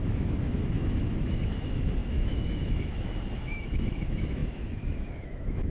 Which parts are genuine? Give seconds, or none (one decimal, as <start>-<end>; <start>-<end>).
none